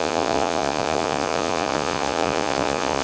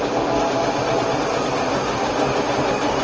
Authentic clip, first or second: second